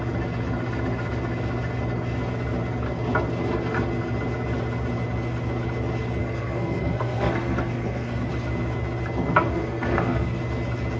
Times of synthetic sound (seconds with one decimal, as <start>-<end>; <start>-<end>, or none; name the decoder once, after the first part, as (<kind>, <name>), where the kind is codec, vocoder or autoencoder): 6.2-8.3 (codec, SNAC); 9.5-10.4